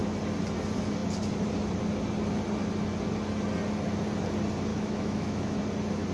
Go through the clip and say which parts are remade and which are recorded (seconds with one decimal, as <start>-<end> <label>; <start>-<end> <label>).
0.0-4.7 recorded; 4.7-5.6 remade; 5.6-6.1 recorded